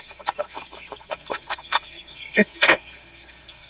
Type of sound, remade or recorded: remade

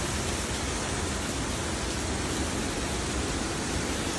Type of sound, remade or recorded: recorded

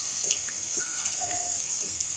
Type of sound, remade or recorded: remade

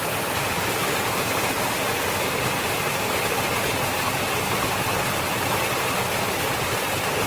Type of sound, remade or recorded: recorded